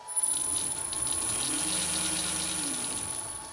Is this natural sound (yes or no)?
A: yes